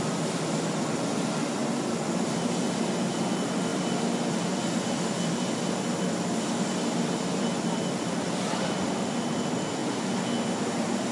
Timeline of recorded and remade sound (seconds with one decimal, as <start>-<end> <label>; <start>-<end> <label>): 0.0-9.8 remade; 9.8-10.6 recorded; 10.6-11.1 remade